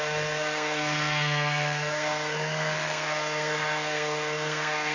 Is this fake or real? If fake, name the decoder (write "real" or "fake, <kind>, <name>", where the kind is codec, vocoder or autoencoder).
fake, codec, SNAC